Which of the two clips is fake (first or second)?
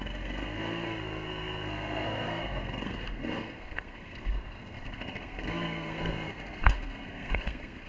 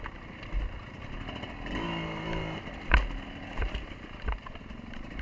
first